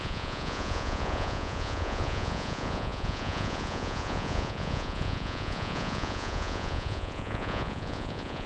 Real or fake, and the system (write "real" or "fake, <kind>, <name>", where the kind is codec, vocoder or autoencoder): fake, vocoder, Vocos